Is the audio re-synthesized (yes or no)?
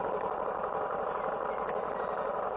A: no